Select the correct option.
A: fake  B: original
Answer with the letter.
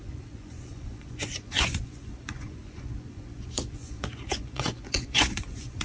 A